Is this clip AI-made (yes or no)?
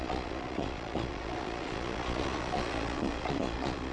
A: yes